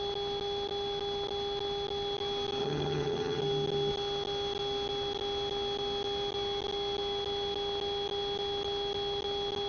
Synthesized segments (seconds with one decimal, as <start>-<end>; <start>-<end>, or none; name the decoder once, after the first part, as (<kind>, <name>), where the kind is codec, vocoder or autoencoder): 2.6-3.4 (vocoder, HiFi-GAN)